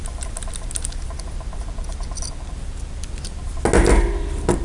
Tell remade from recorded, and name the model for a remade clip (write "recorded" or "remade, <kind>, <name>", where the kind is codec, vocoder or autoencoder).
recorded